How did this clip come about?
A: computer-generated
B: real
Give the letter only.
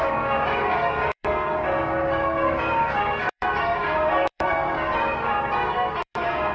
A